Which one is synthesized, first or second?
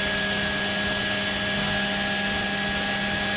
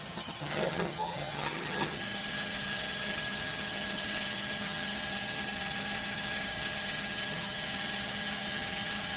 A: second